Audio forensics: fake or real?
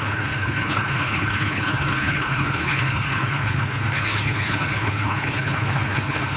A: fake